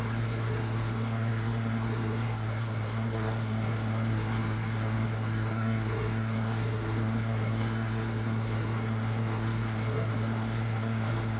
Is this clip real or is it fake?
fake